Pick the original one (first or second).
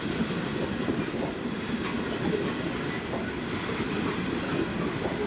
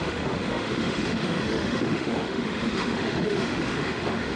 first